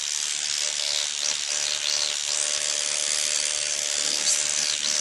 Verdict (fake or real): real